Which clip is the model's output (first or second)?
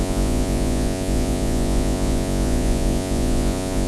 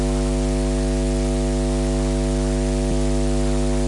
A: first